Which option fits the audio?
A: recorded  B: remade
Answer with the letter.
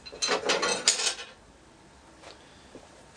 A